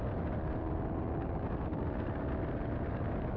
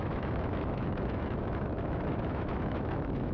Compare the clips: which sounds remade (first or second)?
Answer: second